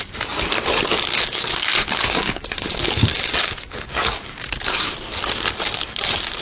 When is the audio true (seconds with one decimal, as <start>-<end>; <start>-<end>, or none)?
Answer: 0.0-1.1; 4.9-6.4